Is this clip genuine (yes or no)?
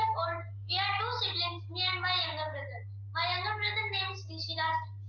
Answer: yes